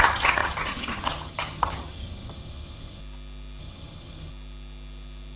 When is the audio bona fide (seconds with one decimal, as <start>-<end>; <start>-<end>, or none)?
3.0-3.6; 4.3-5.4

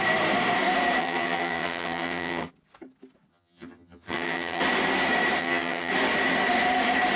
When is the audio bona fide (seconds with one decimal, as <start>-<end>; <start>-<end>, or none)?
0.0-1.0; 2.5-3.3; 4.6-5.4; 5.9-7.2

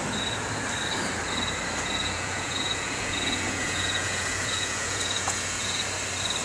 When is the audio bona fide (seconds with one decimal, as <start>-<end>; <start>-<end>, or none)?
0.0-2.0; 5.8-6.4

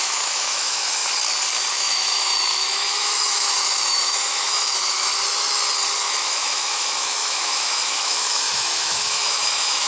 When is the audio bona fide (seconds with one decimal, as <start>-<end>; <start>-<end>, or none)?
1.0-1.7; 5.1-6.0

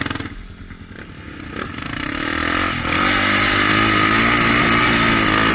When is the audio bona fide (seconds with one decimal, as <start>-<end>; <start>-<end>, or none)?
0.0-5.5

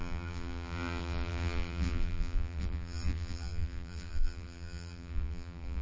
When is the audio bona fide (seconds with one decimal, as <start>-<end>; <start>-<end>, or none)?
none

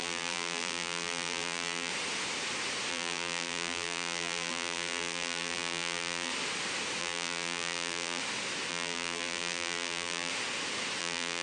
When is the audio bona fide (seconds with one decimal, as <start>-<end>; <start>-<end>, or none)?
1.9-2.9; 6.3-7.0; 8.2-8.7; 10.3-11.0

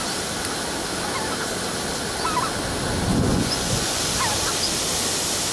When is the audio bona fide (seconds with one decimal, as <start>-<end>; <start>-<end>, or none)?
0.0-3.1; 4.0-5.5